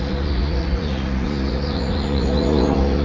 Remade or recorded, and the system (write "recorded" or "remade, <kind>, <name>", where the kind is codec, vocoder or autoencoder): remade, vocoder, Vocos